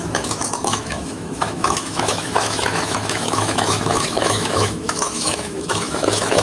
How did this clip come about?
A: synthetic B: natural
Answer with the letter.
A